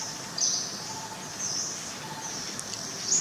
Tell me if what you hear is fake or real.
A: real